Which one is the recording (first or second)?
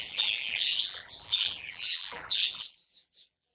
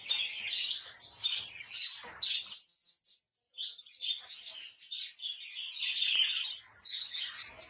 second